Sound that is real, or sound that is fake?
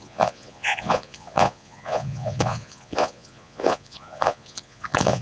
fake